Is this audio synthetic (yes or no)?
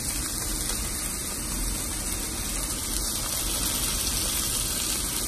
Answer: no